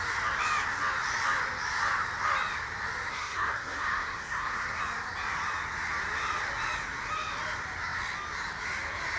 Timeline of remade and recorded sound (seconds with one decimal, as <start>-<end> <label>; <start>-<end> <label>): 0.0-3.1 recorded; 3.1-4.8 remade; 4.8-9.2 recorded